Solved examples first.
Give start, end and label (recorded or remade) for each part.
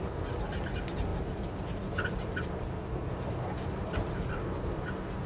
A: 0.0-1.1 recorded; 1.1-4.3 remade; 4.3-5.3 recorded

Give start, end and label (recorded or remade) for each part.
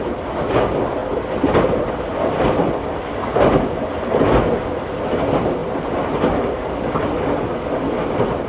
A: 0.0-8.5 recorded